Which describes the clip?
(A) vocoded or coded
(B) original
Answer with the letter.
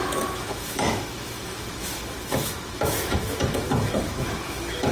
A